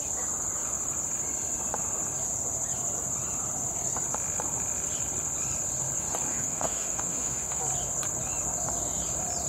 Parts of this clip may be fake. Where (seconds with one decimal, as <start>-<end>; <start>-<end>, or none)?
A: 6.3-7.6